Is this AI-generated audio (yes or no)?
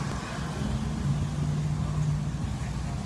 no